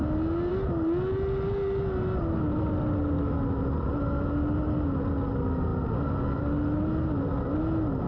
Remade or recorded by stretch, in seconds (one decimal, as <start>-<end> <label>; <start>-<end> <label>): 0.0-8.1 recorded